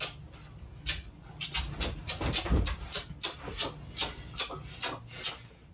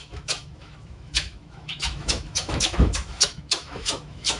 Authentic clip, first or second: first